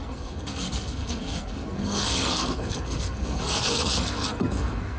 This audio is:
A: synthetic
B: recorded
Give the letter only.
A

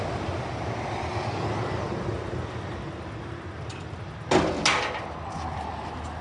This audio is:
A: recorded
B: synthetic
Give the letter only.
A